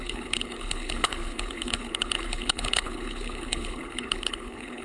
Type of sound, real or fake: fake